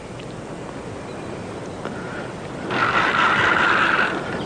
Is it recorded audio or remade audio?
recorded